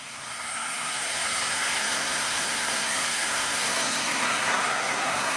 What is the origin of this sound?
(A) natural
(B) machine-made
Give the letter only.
B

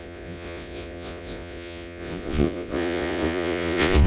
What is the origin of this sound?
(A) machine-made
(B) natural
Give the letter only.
A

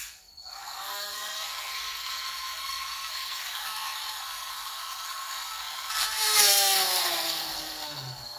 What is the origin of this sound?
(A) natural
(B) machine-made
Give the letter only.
B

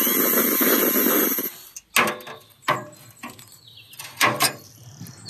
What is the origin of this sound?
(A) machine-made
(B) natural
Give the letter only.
B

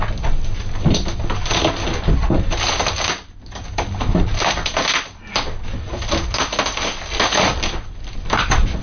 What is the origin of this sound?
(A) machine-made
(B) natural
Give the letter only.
B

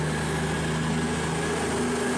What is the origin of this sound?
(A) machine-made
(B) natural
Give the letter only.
B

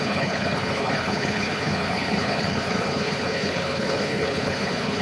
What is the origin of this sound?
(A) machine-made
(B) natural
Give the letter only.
A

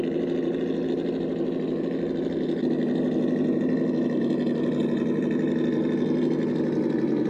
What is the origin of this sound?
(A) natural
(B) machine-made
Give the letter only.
A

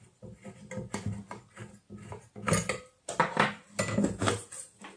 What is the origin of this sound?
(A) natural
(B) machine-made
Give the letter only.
A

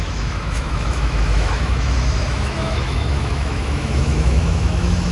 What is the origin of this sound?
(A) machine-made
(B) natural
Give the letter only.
A